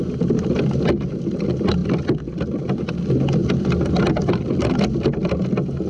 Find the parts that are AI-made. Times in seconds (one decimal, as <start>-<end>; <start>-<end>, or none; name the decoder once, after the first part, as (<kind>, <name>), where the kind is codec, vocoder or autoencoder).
1.8-2.4 (vocoder, BigVGAN v2); 3.4-5.3